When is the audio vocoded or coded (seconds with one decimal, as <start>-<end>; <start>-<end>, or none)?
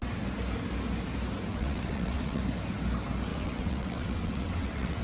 1.5-2.4; 3.3-5.0